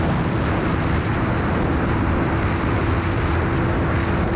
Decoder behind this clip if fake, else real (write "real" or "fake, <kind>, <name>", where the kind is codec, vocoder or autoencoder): real